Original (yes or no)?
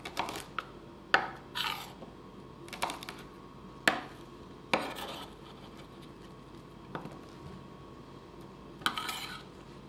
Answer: yes